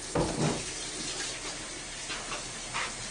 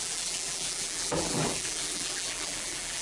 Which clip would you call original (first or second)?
first